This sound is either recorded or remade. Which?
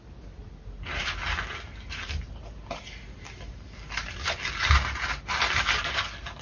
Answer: recorded